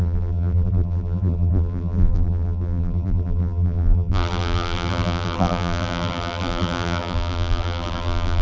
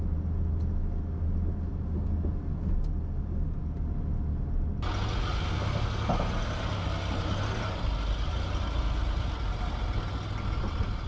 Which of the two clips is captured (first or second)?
second